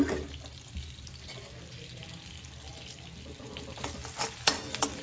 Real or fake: real